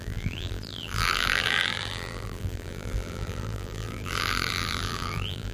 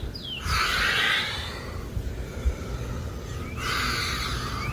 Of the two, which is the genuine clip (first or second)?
second